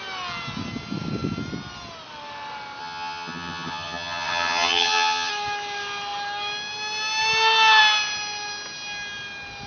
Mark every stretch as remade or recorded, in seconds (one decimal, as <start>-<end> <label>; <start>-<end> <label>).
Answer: 0.0-2.8 recorded; 2.8-5.3 remade; 5.3-9.7 recorded